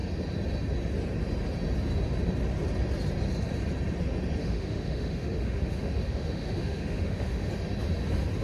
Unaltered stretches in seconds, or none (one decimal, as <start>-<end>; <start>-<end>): 0.0-4.4; 7.5-8.4